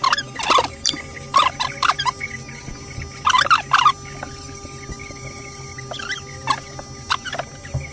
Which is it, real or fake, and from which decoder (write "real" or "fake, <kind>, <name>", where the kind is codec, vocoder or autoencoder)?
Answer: real